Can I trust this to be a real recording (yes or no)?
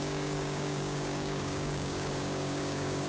no